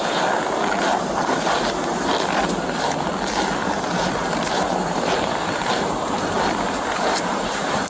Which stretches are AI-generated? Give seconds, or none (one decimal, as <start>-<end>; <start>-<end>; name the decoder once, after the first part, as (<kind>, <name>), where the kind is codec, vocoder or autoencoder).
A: 0.9-1.7 (vocoder, BigVGAN v2); 3.6-7.9